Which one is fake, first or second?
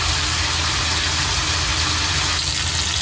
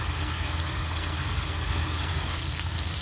second